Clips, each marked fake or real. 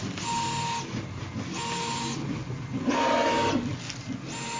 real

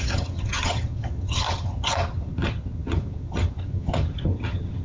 fake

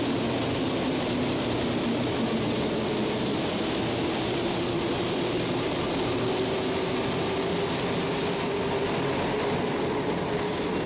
real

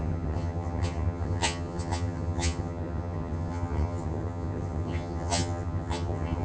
fake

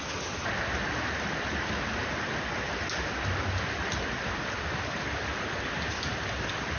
real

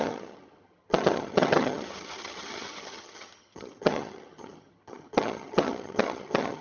fake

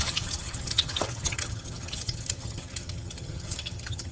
fake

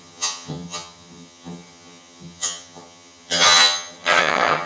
fake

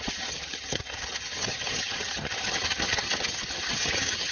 fake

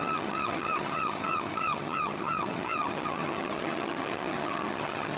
fake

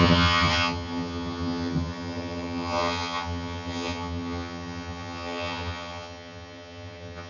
fake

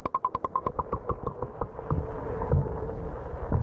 real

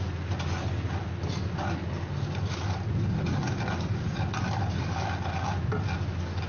real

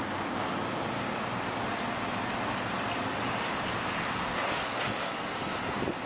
real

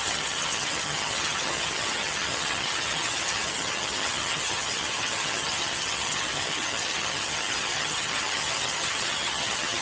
fake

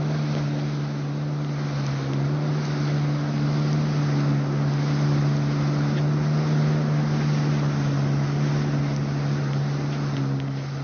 real